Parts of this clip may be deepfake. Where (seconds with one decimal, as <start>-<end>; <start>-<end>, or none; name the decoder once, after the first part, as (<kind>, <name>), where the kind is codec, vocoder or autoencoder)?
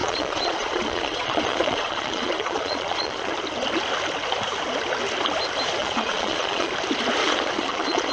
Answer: 0.0-3.3 (vocoder, Vocos); 5.8-6.7; 7.2-8.1